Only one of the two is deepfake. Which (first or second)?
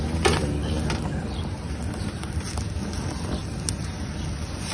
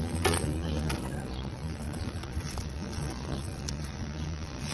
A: second